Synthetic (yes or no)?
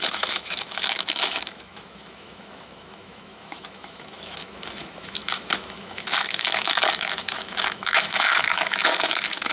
yes